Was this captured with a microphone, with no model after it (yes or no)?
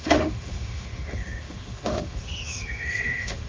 no